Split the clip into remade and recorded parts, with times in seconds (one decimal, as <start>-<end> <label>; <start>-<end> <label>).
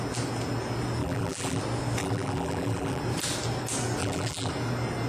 0.0-1.0 recorded; 1.0-1.6 remade; 1.6-2.0 recorded; 2.0-3.0 remade; 3.0-4.0 recorded; 4.0-4.5 remade; 4.5-5.1 recorded